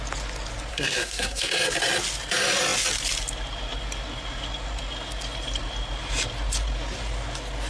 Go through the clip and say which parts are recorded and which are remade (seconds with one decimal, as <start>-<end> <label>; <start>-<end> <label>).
0.0-0.7 recorded; 0.7-1.5 remade; 1.5-7.7 recorded